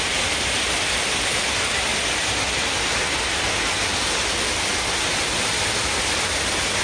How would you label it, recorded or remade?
recorded